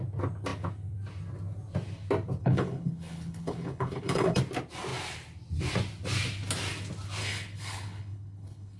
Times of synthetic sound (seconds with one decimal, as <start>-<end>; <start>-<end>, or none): 2.4-4.4; 7.2-8.8